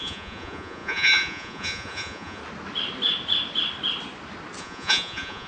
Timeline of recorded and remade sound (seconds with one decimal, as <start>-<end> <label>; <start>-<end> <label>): 0.0-2.4 remade; 2.4-4.6 recorded; 4.6-5.5 remade